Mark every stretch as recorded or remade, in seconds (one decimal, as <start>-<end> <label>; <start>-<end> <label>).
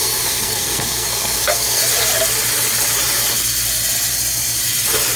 0.0-1.8 remade; 1.8-5.2 recorded